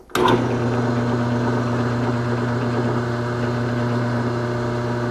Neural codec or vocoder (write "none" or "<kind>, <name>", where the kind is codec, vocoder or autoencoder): none